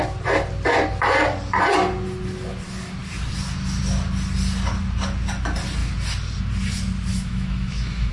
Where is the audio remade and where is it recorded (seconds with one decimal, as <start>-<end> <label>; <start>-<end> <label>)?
0.0-7.1 recorded; 7.1-8.1 remade

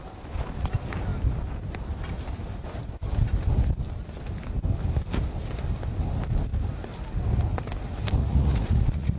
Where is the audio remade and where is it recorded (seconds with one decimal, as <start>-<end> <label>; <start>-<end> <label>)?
0.0-8.2 recorded; 8.2-9.2 remade